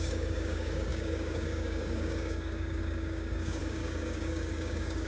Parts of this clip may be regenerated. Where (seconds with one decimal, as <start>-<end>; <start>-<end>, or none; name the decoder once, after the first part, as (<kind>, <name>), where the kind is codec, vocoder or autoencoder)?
0.0-5.1 (codec, DAC)